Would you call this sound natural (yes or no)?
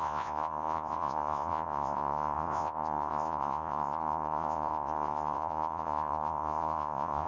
no